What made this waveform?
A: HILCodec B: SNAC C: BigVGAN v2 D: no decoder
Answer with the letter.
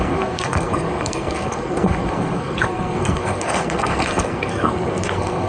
B